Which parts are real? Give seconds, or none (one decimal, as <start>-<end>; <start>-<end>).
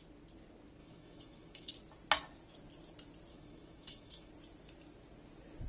0.0-0.8; 1.7-3.3; 4.3-5.7